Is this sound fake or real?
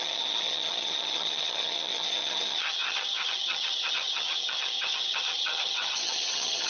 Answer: fake